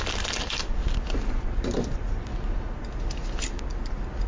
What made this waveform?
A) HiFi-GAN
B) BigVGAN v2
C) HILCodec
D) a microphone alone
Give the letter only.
D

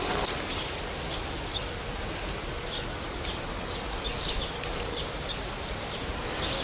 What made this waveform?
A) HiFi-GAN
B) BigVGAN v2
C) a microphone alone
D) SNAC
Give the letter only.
C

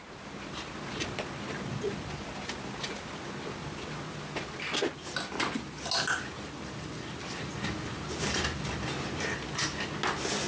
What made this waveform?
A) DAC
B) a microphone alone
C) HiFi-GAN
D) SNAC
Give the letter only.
B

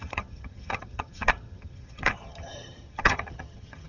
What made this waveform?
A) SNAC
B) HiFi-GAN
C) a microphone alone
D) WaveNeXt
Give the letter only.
B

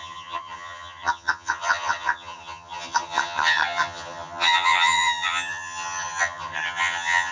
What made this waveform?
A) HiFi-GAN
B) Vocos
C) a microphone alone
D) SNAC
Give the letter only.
A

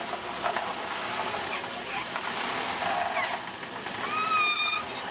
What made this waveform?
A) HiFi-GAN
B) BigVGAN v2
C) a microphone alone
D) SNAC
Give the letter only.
C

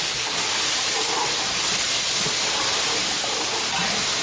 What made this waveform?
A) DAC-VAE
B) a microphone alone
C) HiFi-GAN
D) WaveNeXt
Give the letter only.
B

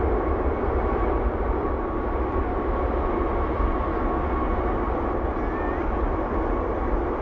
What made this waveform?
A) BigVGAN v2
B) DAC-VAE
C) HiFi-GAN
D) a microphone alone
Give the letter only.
D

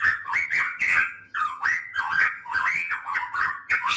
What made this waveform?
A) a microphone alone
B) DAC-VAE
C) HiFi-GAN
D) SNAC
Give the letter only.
C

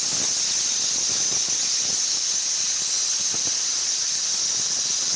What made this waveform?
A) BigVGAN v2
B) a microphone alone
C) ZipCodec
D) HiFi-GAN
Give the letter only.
B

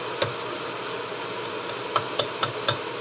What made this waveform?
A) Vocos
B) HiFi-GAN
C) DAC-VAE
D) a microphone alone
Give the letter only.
D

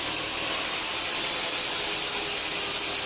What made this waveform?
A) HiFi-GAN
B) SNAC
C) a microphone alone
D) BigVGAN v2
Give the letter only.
C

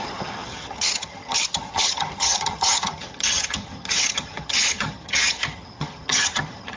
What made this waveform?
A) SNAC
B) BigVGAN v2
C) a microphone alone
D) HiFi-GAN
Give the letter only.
D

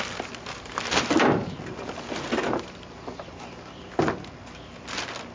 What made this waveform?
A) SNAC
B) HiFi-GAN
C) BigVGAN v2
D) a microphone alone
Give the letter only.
D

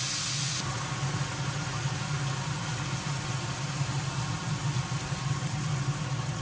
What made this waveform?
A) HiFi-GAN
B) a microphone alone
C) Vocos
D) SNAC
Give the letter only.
B